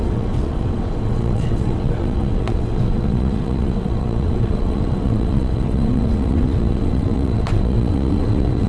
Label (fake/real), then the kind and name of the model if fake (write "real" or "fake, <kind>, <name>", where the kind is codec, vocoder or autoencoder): fake, vocoder, WaveNeXt